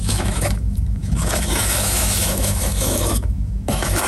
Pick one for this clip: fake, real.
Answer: fake